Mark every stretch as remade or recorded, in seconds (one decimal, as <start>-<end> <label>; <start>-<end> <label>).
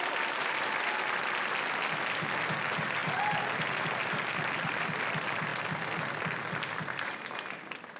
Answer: 0.0-8.0 recorded